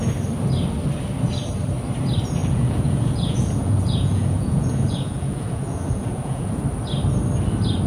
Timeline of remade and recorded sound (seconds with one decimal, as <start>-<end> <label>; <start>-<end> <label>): 0.0-2.4 recorded; 2.4-6.6 remade; 6.6-7.9 recorded